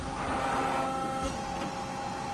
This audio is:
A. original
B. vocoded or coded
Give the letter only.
A